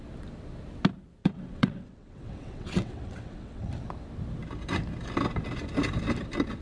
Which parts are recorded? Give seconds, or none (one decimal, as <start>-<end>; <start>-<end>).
0.0-1.2; 3.7-6.6